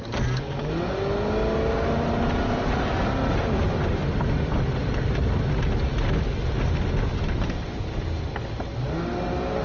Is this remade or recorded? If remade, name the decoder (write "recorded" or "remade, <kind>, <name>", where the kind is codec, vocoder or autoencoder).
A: recorded